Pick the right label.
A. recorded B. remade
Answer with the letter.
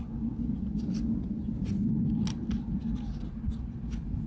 A